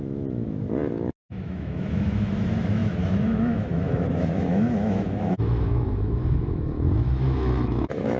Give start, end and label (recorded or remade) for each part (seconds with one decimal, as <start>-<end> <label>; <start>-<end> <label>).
0.0-8.2 remade